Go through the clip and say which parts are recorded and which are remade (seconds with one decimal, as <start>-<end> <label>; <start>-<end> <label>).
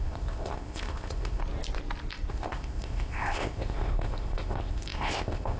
0.0-1.4 remade; 1.4-2.3 recorded; 2.3-5.6 remade